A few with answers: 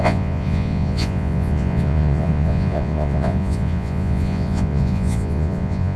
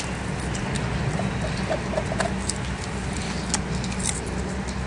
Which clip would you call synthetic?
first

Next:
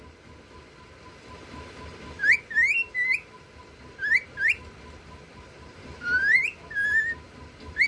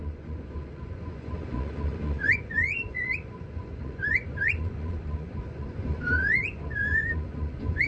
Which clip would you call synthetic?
second